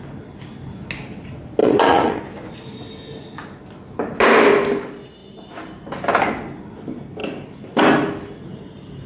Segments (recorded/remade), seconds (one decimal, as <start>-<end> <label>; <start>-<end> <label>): 0.0-1.6 recorded; 1.6-2.2 remade; 2.2-9.1 recorded